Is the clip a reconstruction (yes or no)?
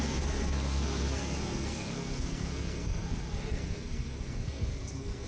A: yes